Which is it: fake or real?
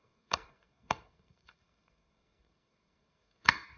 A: fake